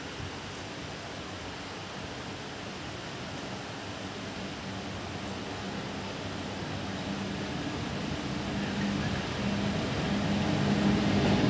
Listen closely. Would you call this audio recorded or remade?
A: recorded